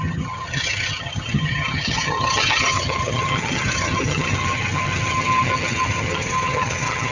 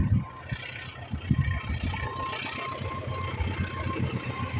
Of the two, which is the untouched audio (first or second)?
second